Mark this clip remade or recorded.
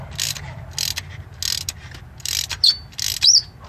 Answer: recorded